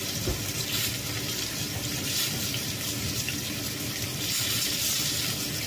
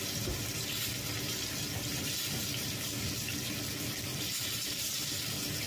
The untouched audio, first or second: second